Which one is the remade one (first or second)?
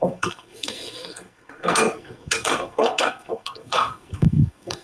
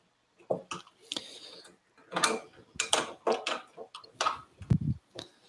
first